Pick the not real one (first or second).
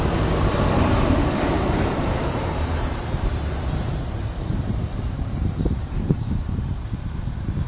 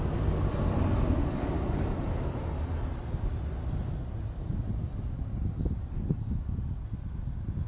first